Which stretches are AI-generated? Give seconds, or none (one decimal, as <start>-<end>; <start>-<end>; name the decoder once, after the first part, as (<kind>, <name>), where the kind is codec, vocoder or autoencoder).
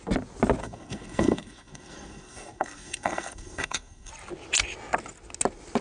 0.6-4.1 (codec, SNAC)